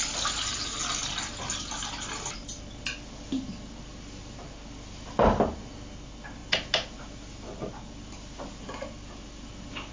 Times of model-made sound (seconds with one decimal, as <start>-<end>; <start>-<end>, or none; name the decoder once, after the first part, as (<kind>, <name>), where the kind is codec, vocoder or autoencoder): none